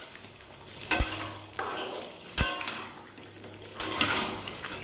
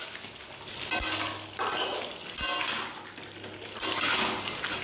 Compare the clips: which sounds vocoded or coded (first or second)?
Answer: first